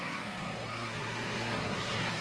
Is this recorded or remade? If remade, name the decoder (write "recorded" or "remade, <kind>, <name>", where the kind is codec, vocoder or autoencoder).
remade, codec, SNAC